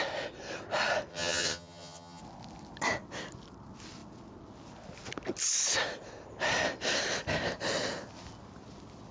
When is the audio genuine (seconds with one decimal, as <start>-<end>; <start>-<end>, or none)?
0.0-1.1; 2.2-9.1